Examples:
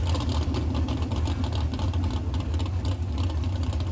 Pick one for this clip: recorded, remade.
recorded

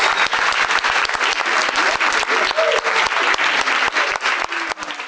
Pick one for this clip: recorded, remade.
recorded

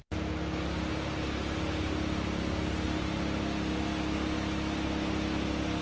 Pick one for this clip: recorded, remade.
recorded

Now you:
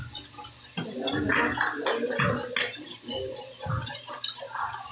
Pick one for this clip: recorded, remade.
recorded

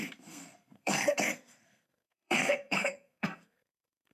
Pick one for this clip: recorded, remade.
remade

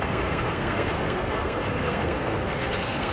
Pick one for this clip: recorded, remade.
remade